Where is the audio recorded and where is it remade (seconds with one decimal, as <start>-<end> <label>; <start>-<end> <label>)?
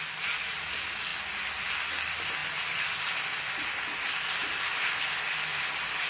0.0-6.1 recorded